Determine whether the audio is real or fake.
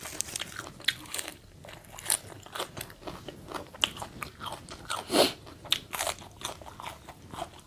real